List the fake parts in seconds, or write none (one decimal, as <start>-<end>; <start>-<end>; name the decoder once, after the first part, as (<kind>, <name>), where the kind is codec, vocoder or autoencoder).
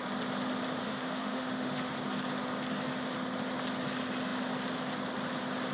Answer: 0.8-1.9 (autoencoder, DAC-VAE)